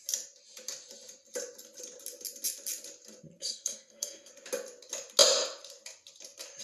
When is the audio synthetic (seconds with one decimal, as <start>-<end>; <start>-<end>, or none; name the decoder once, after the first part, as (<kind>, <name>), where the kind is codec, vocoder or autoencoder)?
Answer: 3.4-4.3 (codec, SNAC)